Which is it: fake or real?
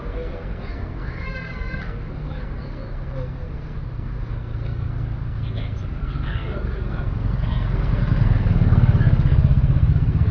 fake